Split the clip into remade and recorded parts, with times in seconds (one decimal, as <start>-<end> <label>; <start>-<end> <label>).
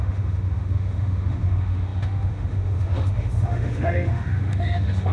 0.0-5.1 remade